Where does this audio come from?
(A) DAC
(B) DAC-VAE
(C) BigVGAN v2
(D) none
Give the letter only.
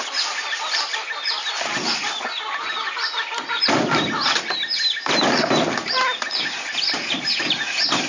D